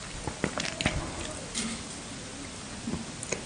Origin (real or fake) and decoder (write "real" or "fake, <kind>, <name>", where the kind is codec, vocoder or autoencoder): real